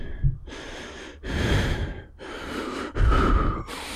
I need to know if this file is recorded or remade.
remade